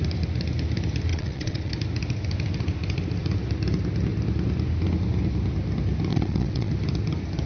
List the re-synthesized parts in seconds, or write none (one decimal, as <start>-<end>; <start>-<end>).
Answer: 1.1-1.7; 6.1-6.7